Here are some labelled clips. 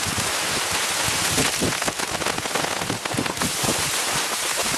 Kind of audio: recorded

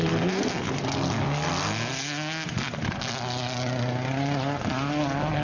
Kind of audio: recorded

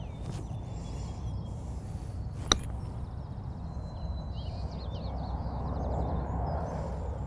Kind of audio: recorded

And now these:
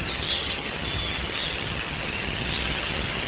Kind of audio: remade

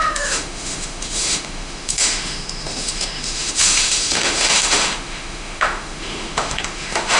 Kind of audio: remade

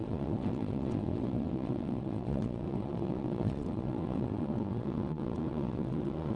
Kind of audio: remade